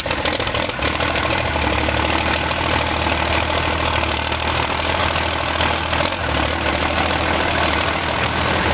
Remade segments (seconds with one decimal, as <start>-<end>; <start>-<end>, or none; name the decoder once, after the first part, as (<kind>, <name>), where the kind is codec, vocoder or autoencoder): 0.0-5.0 (vocoder, BigVGAN v2); 6.7-8.7